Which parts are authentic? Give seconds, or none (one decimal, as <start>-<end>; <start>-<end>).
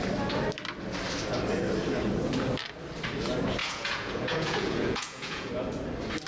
0.0-3.6; 5.5-6.3